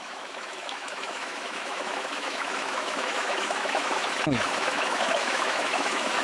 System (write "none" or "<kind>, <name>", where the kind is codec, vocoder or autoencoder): autoencoder, DAC-VAE